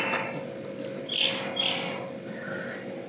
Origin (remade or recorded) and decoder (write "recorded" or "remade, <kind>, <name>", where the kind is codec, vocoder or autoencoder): recorded